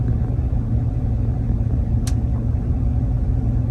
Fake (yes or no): no